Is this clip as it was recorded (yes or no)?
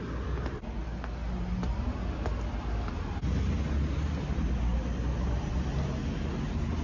yes